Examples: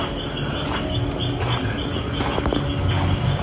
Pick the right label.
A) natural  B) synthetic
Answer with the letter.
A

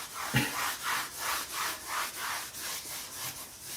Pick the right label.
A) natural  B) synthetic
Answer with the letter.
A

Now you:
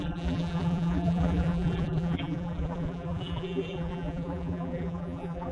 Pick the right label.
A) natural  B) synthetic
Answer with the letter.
B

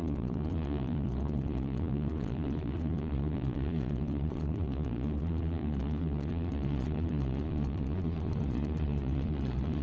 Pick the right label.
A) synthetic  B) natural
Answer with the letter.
A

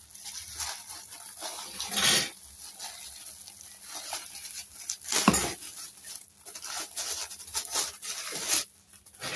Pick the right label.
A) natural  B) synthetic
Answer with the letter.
A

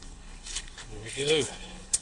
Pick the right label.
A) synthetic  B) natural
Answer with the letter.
A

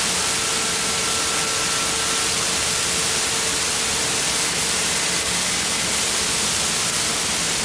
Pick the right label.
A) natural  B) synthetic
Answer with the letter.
A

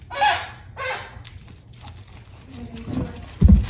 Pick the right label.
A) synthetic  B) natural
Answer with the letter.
B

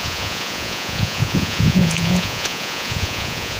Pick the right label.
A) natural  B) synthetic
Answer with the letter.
B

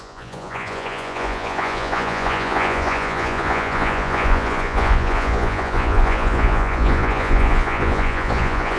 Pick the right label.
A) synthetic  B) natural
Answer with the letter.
A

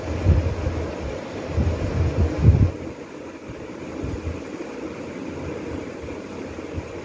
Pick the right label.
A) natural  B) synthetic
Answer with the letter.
A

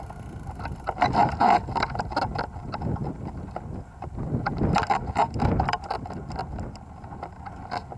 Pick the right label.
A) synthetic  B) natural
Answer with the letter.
B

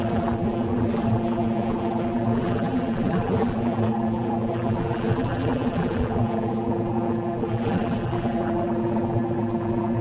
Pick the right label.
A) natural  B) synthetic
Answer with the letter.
B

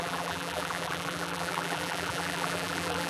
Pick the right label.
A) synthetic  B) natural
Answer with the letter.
A